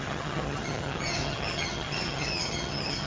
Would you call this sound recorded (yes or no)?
no